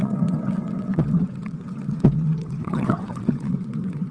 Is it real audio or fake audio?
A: fake